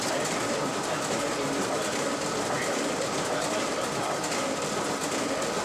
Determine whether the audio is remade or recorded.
recorded